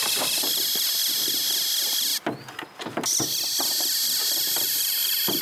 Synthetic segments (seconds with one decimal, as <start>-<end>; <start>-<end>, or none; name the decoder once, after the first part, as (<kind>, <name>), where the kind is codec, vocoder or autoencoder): none